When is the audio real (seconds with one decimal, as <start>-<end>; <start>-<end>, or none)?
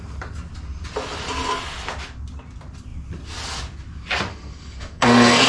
0.0-4.3